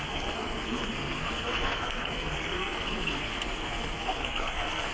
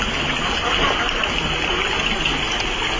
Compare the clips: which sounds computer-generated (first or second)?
first